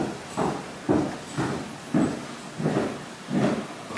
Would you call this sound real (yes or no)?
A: yes